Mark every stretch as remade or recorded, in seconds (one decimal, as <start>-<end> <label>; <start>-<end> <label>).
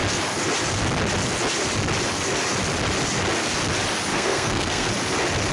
0.0-4.1 recorded; 4.1-4.9 remade; 4.9-5.5 recorded